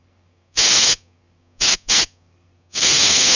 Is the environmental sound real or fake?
fake